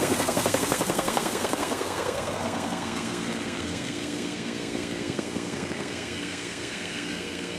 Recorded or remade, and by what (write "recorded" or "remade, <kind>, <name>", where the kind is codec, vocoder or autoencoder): remade, codec, SNAC